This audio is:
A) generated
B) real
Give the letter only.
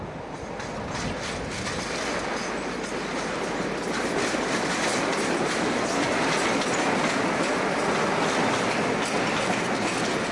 B